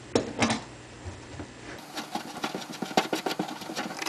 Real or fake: real